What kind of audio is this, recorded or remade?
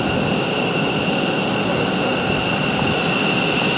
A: recorded